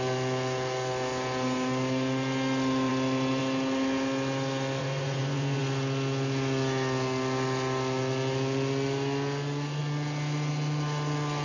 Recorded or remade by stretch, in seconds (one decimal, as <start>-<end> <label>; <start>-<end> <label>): 0.0-4.8 recorded; 4.8-5.6 remade; 5.6-11.4 recorded